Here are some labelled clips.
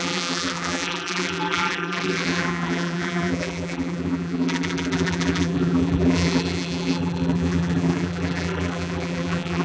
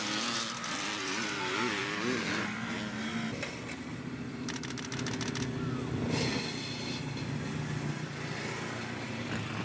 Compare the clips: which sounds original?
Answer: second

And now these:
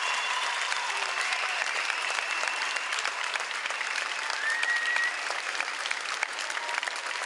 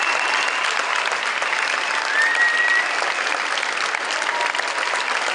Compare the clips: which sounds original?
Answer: second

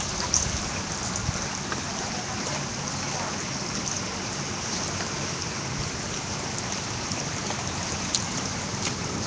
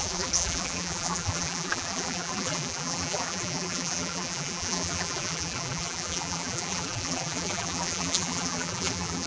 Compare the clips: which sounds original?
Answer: first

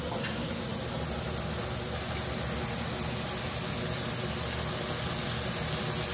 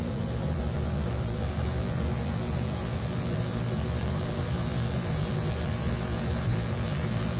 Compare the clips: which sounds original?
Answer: first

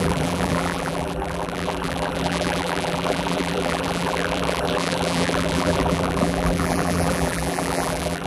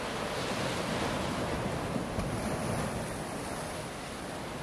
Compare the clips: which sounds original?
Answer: second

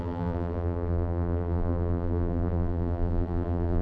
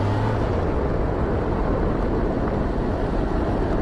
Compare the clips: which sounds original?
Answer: second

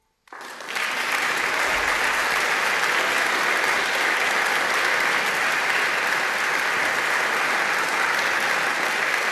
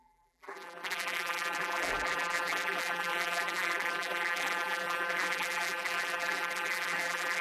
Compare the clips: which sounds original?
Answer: first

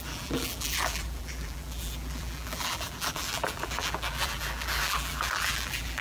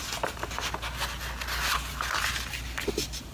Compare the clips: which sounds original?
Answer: second